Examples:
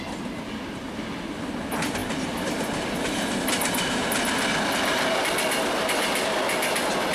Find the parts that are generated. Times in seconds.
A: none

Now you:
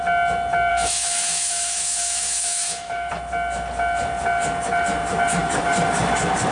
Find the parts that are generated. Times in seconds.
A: 0.7-3.1

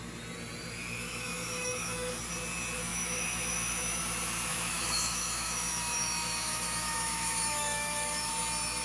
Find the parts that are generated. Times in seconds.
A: 1.0-2.2; 2.9-4.0; 4.5-8.3

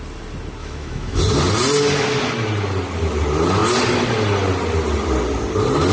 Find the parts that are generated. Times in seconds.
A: 0.6-1.2

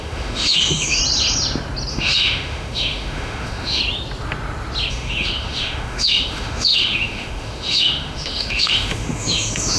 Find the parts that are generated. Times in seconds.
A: 0.0-1.0; 1.9-3.8; 4.9-9.8

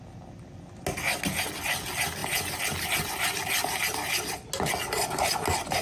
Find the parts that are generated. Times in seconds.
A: none

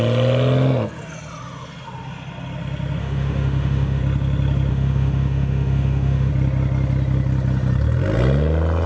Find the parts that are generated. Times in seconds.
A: 3.0-4.0; 4.7-6.3

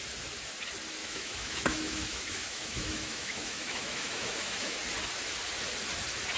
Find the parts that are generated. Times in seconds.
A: 1.0-4.8